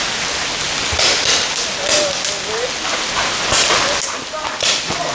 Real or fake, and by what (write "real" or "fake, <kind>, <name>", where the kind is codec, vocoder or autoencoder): real